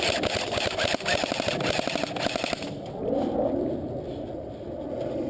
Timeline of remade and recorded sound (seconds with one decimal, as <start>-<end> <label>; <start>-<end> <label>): 0.0-5.3 recorded